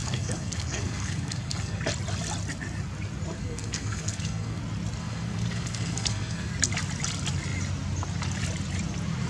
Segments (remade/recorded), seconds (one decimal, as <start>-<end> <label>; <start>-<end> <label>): 0.0-1.8 remade; 1.8-3.4 recorded; 3.4-4.6 remade; 4.6-5.0 recorded; 5.0-6.5 remade; 6.5-9.3 recorded